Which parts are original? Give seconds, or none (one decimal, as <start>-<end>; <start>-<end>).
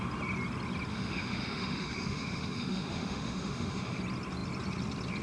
0.0-0.9; 4.0-5.2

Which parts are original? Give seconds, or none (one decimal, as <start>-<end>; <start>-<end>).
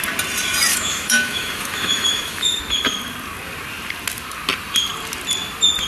0.0-0.7; 2.6-5.9